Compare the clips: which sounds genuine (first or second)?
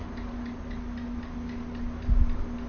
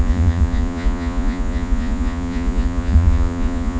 first